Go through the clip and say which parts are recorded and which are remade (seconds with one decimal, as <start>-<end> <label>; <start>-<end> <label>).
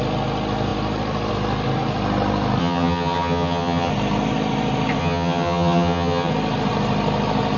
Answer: 0.0-2.6 recorded; 2.6-3.9 remade; 3.9-5.0 recorded; 5.0-6.3 remade; 6.3-7.6 recorded